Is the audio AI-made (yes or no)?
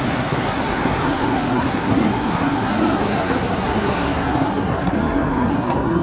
yes